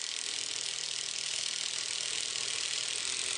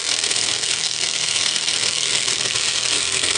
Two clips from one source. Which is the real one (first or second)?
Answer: first